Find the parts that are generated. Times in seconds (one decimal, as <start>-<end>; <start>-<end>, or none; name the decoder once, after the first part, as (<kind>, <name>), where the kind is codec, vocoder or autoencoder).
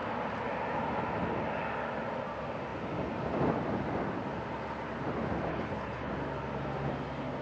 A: 5.5-6.1 (codec, HILCodec)